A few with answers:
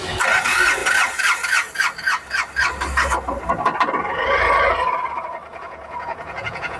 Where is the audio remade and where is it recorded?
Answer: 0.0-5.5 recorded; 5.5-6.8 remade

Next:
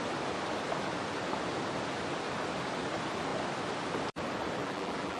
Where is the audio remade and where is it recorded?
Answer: 0.0-4.6 recorded; 4.6-5.2 remade

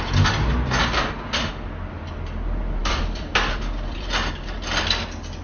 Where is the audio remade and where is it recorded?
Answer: 0.0-0.8 recorded; 0.8-2.0 remade; 2.0-2.8 recorded; 2.8-5.0 remade; 5.0-5.4 recorded

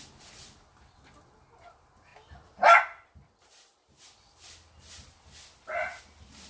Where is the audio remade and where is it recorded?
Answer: 0.0-6.5 recorded